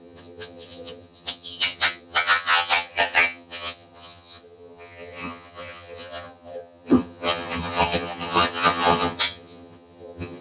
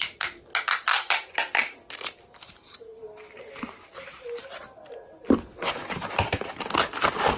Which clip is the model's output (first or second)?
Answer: first